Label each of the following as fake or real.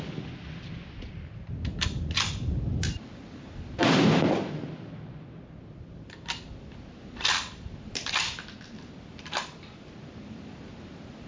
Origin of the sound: real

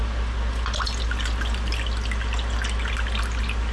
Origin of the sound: real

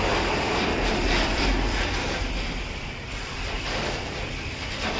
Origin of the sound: fake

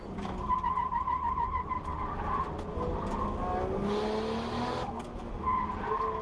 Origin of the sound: real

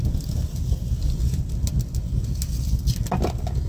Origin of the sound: real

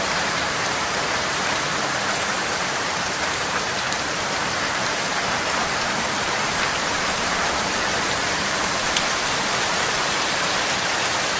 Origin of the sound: fake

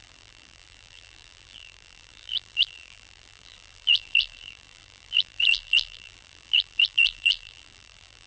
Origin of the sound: fake